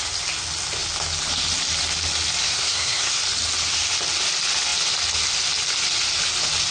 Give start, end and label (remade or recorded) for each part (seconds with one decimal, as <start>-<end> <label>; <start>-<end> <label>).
0.0-2.4 recorded; 2.4-3.2 remade; 3.2-6.7 recorded